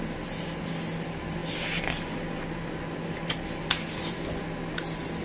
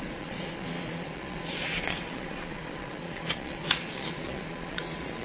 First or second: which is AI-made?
second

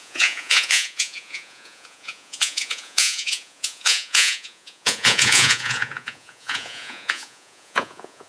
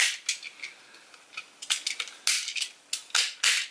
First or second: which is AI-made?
first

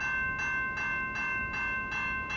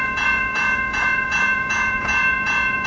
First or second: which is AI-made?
second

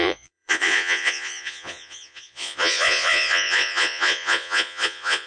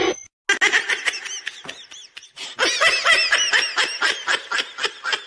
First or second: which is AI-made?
first